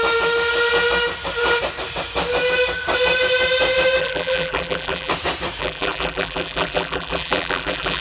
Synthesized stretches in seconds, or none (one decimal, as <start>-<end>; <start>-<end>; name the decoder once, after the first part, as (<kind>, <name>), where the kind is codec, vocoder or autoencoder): 4.0-5.1 (vocoder, BigVGAN v2); 5.6-8.0